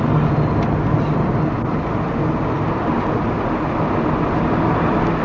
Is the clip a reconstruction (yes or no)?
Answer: no